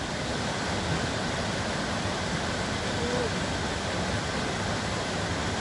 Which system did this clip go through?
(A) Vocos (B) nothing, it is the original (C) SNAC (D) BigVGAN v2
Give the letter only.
B